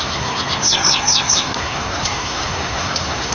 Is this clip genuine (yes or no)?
no